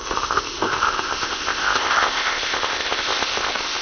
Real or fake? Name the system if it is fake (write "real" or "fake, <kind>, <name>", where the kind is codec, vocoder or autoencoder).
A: fake, codec, ZipCodec